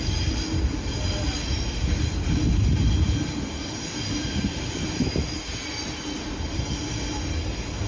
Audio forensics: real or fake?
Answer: real